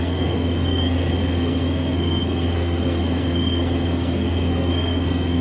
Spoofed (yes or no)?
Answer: yes